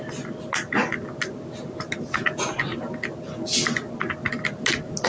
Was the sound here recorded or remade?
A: recorded